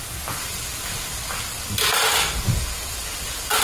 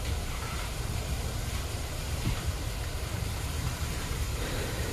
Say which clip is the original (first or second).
first